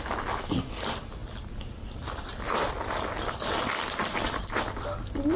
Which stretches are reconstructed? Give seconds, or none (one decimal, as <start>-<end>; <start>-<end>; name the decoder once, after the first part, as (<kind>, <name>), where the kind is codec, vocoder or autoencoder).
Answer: none